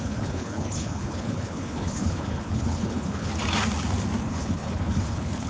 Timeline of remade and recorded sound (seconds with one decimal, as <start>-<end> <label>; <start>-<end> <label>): 0.0-3.3 remade; 3.3-4.2 recorded; 4.2-5.5 remade